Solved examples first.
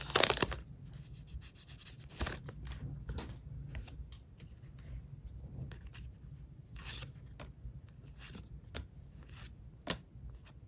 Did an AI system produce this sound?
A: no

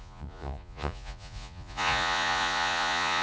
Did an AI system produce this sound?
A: yes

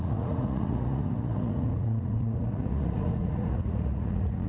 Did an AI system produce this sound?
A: yes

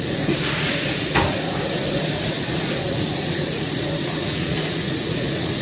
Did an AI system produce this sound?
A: yes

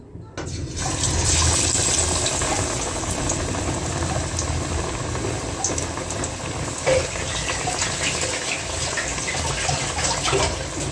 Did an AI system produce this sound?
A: no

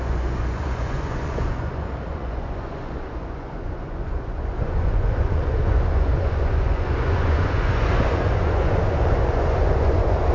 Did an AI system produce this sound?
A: yes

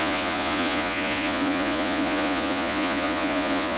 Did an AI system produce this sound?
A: yes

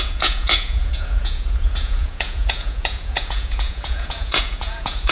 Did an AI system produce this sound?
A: yes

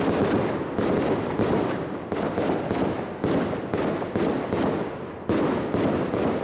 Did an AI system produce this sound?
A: no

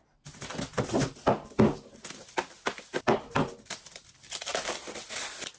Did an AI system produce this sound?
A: no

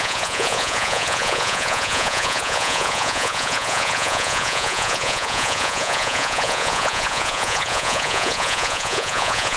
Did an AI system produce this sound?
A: yes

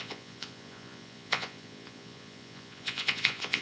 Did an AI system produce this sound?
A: yes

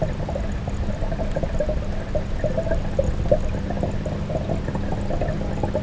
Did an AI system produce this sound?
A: no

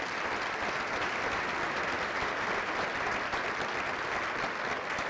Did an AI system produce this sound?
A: no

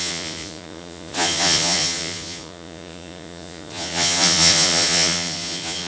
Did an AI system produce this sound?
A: yes